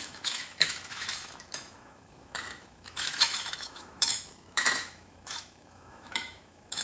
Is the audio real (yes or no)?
no